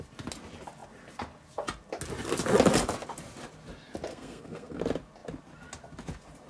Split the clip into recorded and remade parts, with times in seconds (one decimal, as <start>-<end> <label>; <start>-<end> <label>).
0.0-4.1 recorded; 4.1-4.8 remade; 4.8-6.5 recorded